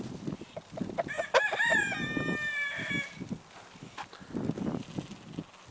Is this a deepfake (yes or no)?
no